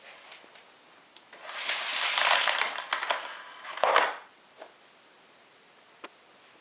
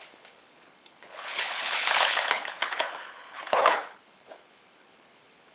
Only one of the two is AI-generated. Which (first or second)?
second